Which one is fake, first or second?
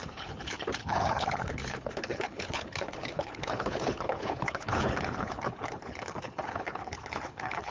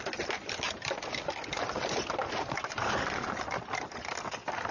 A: first